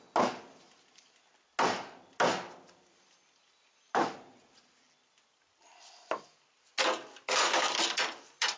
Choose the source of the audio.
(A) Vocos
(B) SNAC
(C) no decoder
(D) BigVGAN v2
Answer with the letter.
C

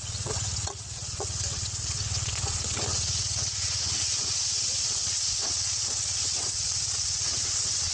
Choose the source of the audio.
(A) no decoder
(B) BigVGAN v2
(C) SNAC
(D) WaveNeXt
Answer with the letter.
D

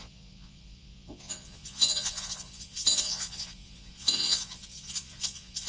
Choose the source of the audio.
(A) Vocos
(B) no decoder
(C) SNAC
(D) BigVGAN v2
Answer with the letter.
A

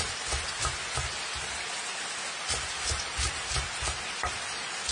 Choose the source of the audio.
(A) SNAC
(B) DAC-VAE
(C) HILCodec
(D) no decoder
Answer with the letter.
D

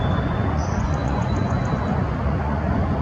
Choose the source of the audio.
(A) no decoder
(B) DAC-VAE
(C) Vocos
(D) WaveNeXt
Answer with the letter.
C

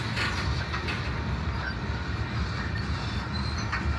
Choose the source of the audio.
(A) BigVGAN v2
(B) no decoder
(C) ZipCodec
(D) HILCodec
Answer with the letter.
B